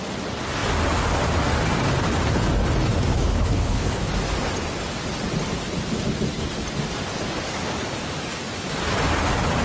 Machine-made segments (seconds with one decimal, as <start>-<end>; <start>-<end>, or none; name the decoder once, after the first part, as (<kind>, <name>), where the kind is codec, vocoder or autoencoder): 3.1-4.1 (codec, HILCodec)